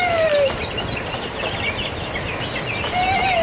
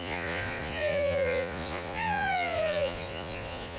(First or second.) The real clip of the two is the first